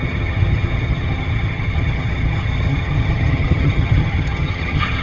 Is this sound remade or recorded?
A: remade